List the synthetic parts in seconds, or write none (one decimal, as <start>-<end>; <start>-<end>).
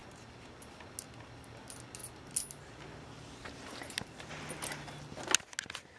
none